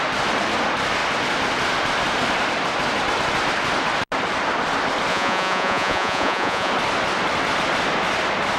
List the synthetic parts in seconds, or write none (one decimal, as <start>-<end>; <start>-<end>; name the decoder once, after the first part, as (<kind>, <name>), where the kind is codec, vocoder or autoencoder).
5.1-6.7 (vocoder, Vocos)